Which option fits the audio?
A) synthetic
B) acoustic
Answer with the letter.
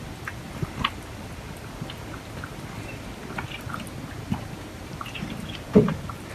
B